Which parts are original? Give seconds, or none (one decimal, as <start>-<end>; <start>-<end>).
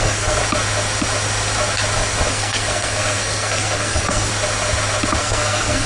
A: 0.4-2.3; 4.3-5.2